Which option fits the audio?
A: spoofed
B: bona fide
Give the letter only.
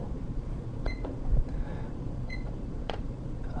A